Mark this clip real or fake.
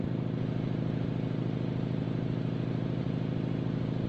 real